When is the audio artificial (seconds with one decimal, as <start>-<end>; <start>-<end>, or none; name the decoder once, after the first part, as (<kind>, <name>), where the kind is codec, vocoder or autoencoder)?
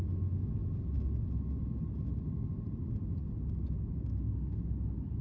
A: 4.1-4.7 (autoencoder, DAC-VAE)